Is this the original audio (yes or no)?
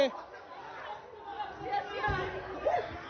yes